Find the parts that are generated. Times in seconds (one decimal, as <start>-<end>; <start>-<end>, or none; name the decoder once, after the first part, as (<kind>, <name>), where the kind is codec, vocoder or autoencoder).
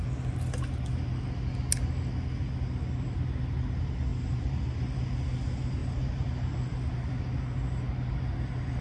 4.1-4.8 (vocoder, BigVGAN v2); 5.8-6.4